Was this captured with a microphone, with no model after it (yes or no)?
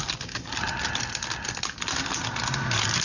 yes